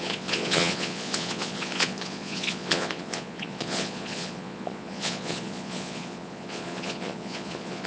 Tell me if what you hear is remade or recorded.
remade